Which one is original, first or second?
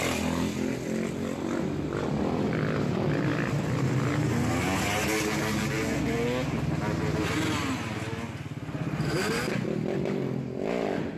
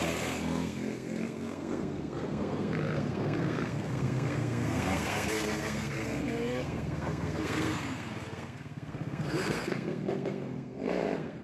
first